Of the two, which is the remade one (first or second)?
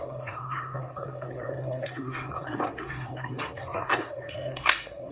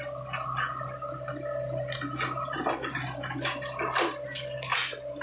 first